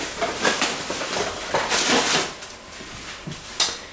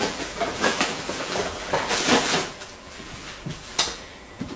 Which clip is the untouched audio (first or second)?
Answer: first